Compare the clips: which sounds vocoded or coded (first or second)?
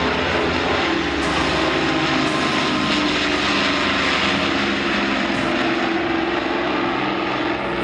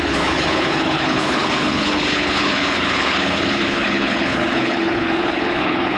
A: second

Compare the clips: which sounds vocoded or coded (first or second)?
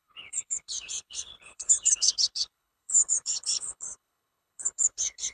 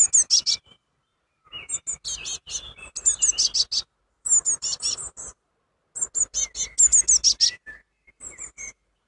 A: first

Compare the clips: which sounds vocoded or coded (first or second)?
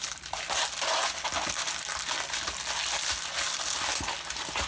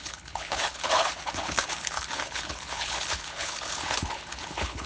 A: second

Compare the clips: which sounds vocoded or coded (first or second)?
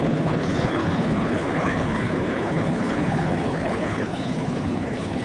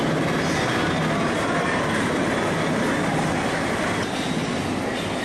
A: first